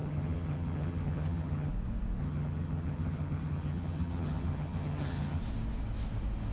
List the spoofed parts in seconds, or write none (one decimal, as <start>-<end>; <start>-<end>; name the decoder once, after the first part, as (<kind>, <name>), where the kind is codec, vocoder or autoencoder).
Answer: 0.0-1.7 (vocoder, HiFi-GAN); 2.2-5.4